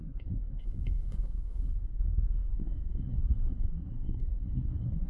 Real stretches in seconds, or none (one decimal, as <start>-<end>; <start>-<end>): none